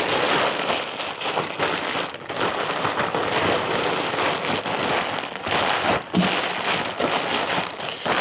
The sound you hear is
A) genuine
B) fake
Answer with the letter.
A